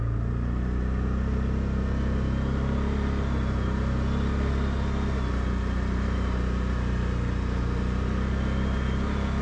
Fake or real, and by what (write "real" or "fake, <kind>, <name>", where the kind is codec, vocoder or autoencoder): real